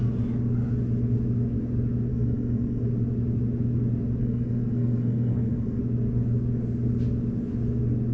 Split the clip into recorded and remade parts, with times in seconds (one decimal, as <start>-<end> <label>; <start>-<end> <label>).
0.0-2.1 recorded; 2.1-2.8 remade; 2.8-4.2 recorded; 4.2-5.8 remade; 5.8-8.1 recorded